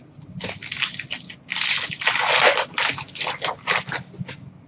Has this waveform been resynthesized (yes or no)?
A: no